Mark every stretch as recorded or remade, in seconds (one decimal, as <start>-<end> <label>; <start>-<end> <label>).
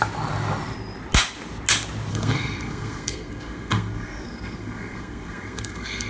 0.0-2.1 recorded; 2.1-6.1 remade